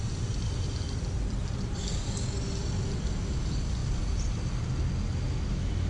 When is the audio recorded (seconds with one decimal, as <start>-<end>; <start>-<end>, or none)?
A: 0.0-3.8; 4.8-5.9

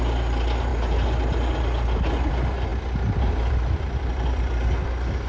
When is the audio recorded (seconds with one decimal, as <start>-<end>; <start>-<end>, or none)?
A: 0.0-0.7; 2.3-2.7

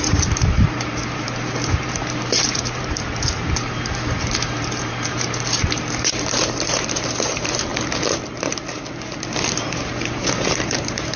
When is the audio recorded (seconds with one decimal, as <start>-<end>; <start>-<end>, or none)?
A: 7.7-9.5

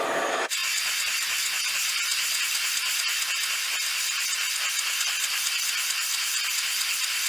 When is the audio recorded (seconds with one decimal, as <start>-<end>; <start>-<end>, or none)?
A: 0.0-7.3

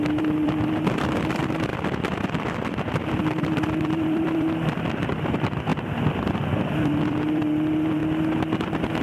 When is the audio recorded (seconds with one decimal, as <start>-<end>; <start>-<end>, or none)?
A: 8.0-9.0

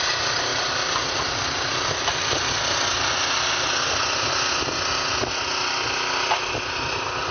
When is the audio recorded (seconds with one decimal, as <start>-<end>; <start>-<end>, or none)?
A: 0.0-0.5; 2.1-7.3